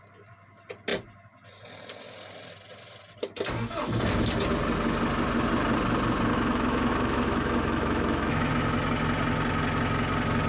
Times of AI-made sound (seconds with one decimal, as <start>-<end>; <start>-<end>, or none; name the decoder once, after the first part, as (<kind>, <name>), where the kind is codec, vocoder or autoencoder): 6.3-8.5 (autoencoder, DAC-VAE)